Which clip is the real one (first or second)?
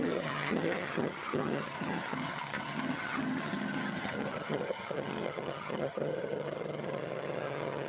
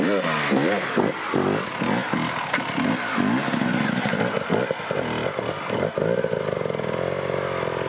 second